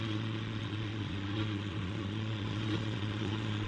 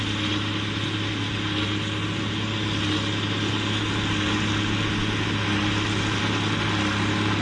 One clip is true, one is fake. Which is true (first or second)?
second